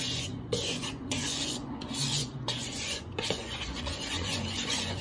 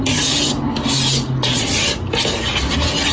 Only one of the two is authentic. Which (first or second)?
second